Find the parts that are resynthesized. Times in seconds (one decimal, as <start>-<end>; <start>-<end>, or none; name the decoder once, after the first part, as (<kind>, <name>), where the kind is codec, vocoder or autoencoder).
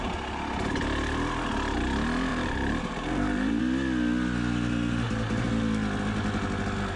2.3-3.6 (vocoder, BigVGAN v2)